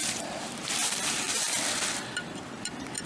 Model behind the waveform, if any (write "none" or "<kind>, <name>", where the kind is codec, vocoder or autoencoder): vocoder, BigVGAN v2